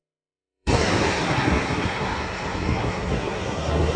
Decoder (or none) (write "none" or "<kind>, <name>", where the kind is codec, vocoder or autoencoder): codec, SNAC